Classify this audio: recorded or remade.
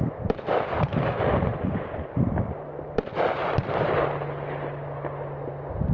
recorded